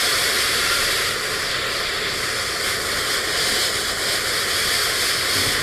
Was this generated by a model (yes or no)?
no